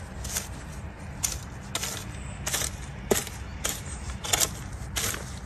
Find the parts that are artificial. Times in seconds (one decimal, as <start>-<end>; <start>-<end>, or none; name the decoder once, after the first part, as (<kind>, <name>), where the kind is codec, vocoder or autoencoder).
3.5-4.3 (vocoder, BigVGAN v2)